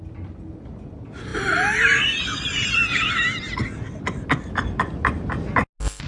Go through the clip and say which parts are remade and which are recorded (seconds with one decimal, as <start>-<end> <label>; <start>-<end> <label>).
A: 0.0-6.1 recorded

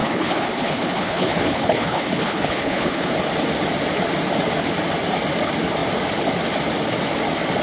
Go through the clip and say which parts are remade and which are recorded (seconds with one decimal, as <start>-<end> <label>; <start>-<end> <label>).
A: 0.0-3.1 remade; 3.1-7.6 recorded